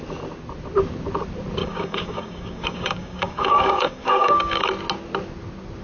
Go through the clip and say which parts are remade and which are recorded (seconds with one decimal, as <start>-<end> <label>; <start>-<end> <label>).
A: 0.0-1.6 recorded; 1.6-4.7 remade; 4.7-5.8 recorded